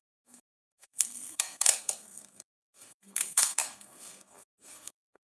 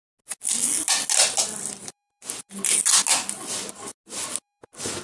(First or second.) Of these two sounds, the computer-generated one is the first